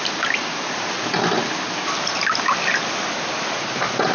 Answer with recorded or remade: recorded